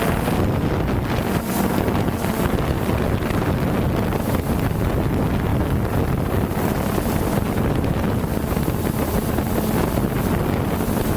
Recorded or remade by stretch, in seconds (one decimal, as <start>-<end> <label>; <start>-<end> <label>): 0.0-5.5 recorded; 5.5-9.3 remade; 9.3-11.2 recorded